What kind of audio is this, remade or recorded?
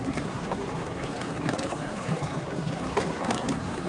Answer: remade